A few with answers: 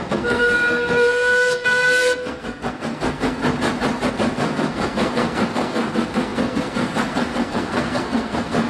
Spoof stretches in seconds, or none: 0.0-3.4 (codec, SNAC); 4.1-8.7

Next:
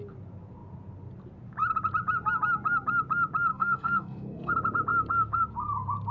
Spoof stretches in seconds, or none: 3.5-4.5 (codec, SNAC)

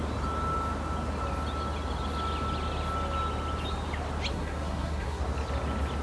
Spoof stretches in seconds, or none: 4.3-5.2 (codec, SNAC)

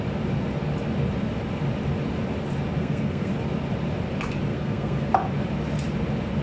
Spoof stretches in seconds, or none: 2.8-3.3 (codec, SNAC); 4.5-5.1

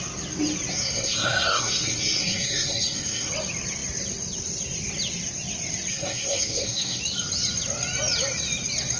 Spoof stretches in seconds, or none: 0.7-3.3 (codec, SNAC); 5.9-7.0

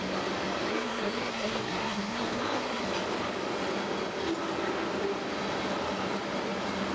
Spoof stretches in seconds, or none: 0.7-2.8 (codec, SNAC)

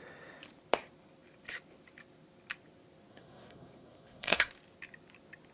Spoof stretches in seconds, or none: 3.1-4.5 (codec, SNAC)